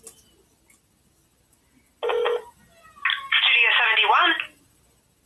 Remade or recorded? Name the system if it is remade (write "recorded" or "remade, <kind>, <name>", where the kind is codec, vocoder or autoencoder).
recorded